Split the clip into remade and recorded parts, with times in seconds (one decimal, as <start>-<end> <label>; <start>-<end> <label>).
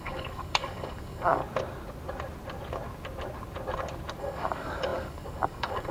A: 0.0-1.4 remade; 1.4-4.2 recorded; 4.2-5.9 remade